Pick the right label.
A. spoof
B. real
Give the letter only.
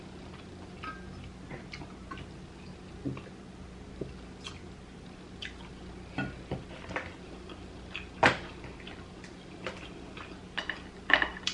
B